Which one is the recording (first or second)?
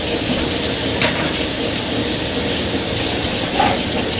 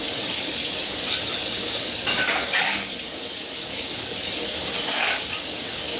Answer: first